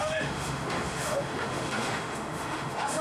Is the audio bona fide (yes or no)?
no